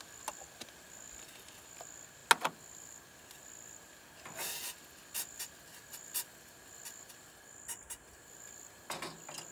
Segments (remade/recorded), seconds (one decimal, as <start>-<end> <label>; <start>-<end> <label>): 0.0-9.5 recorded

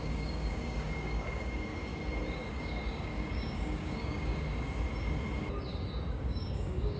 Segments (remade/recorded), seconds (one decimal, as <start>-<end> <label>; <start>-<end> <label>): 0.0-1.9 remade; 1.9-2.5 recorded; 2.5-4.3 remade; 4.3-6.1 recorded; 6.1-7.0 remade

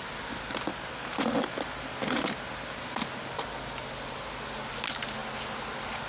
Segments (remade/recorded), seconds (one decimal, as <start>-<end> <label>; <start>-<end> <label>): 0.0-6.1 recorded

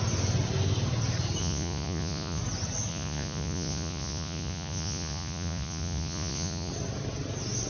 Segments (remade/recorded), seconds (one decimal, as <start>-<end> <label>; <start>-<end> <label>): 0.0-1.4 recorded; 1.4-2.4 remade; 2.4-2.9 recorded; 2.9-6.7 remade; 6.7-7.7 recorded